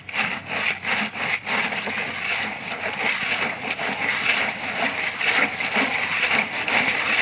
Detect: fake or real real